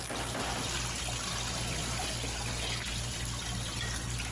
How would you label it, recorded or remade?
recorded